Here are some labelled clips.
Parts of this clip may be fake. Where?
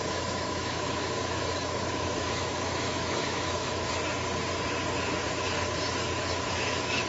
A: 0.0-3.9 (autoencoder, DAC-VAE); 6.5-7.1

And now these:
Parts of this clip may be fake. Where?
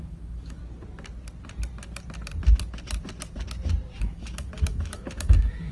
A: 0.0-0.6 (autoencoder, DAC-VAE); 4.0-5.7